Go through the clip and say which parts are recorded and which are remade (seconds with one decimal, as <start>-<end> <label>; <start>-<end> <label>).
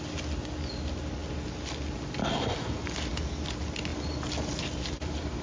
0.0-5.4 recorded